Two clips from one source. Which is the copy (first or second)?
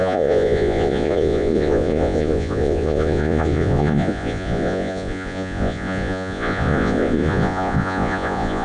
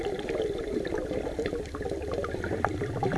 first